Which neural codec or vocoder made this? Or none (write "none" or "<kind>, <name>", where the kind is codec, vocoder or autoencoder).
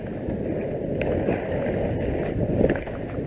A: none